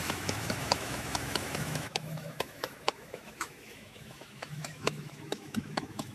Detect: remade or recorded remade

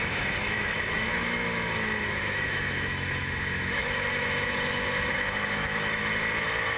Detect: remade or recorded remade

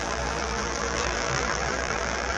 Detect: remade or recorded remade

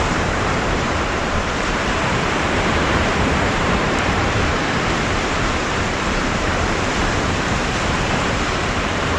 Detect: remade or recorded remade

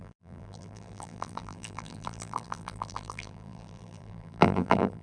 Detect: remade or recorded remade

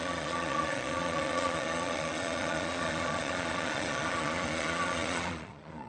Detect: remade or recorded remade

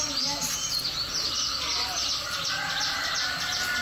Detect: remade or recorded recorded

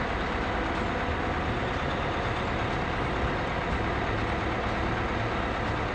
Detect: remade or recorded recorded